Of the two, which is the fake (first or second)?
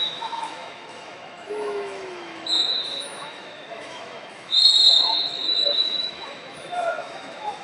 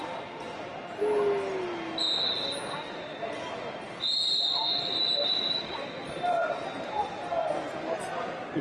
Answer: first